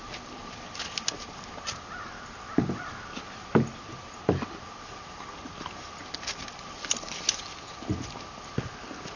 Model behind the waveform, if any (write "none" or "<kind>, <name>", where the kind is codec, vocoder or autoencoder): none